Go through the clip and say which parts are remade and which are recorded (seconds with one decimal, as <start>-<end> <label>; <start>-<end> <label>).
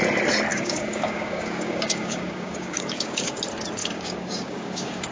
0.0-0.5 recorded; 0.5-3.4 remade; 3.4-3.8 recorded; 3.8-5.1 remade